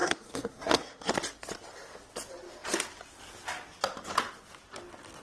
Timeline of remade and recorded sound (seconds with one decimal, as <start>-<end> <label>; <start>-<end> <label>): 0.0-1.1 remade; 1.1-5.2 recorded